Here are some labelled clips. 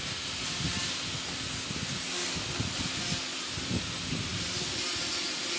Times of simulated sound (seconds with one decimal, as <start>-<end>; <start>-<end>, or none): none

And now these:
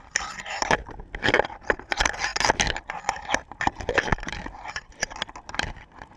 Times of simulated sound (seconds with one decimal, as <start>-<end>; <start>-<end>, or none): 4.1-4.9

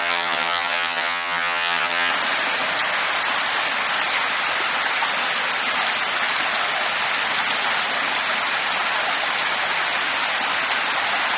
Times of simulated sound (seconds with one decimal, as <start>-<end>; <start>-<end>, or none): 0.0-2.1

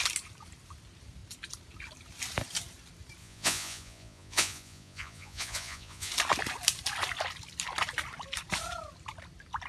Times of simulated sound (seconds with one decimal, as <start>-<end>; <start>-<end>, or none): 3.2-6.1